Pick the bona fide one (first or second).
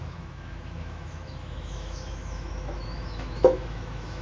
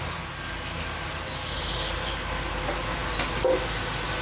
second